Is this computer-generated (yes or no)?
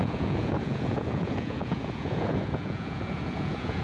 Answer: yes